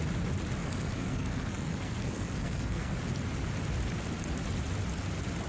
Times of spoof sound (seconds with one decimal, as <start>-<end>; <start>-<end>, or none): 0.6-2.9